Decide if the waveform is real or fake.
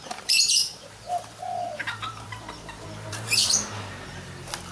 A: fake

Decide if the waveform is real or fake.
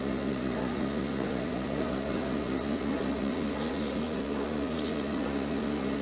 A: fake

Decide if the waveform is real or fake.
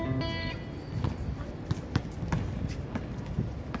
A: real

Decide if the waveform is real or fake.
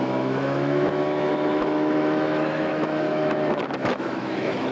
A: fake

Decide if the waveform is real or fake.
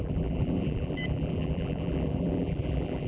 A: fake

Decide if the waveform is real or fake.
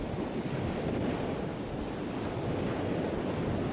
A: real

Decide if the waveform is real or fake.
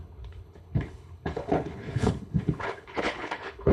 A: fake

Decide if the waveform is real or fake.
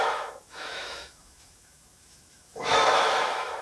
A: fake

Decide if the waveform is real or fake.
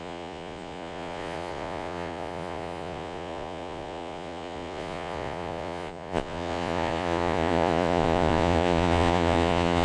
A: fake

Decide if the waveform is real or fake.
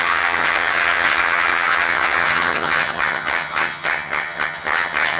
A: fake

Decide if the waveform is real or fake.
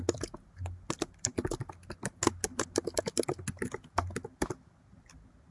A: real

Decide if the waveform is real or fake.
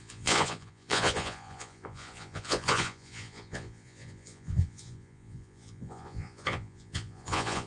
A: fake